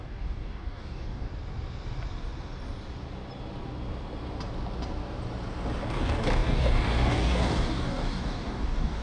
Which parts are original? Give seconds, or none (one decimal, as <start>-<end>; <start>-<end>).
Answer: 1.3-5.8